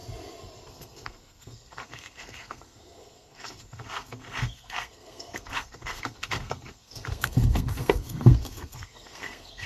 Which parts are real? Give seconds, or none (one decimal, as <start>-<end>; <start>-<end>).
0.0-0.7